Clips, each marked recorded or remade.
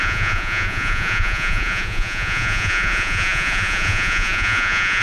remade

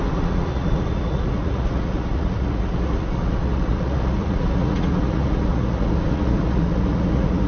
remade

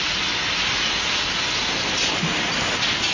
recorded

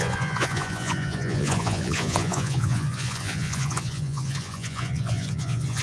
remade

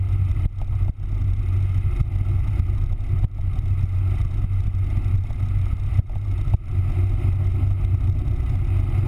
recorded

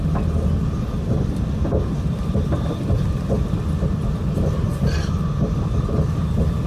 recorded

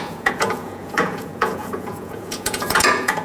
remade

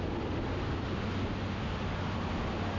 recorded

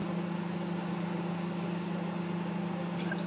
recorded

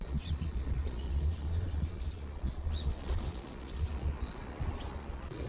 remade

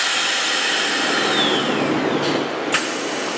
recorded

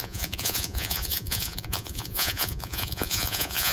remade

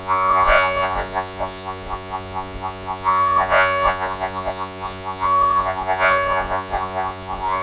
remade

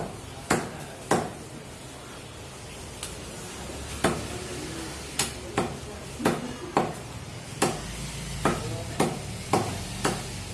recorded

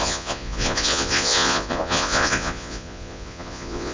remade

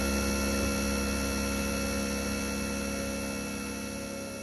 recorded